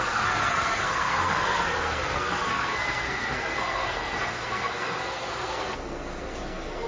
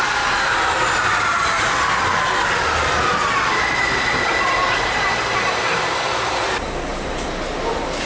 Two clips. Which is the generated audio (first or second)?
first